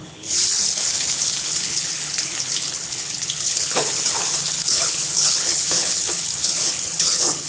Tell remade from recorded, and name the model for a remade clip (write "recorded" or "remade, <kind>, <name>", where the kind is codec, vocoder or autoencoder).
remade, codec, HILCodec